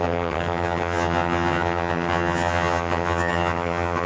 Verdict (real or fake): fake